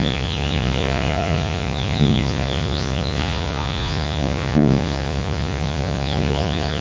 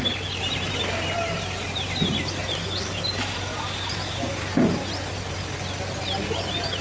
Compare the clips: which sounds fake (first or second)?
first